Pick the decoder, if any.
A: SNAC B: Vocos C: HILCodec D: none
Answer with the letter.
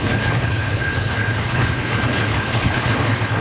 C